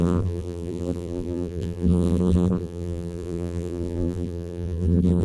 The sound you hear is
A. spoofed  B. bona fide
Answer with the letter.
A